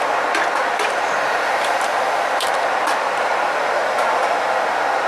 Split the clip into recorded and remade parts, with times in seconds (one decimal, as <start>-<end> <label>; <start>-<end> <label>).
0.0-0.6 recorded; 0.6-3.7 remade; 3.7-5.1 recorded